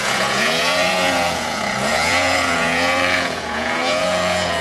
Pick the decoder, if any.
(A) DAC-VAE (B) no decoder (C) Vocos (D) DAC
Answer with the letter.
C